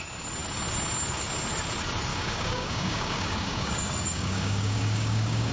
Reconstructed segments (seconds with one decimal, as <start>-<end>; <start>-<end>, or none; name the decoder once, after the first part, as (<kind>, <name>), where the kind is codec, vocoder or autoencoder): 2.1-5.5 (codec, DAC)